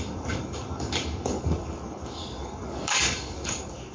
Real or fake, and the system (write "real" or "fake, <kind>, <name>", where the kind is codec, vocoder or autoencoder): fake, codec, DAC